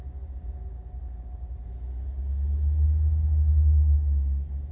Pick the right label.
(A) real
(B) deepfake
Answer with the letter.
A